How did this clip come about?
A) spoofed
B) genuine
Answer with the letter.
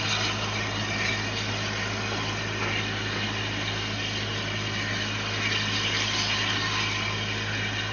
B